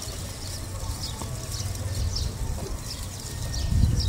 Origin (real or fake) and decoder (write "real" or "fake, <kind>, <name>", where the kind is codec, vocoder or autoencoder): real